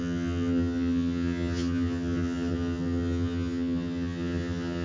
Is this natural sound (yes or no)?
no